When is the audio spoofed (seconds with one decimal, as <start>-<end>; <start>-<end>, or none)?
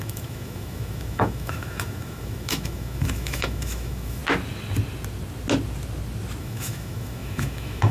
0.0-4.2; 6.4-7.9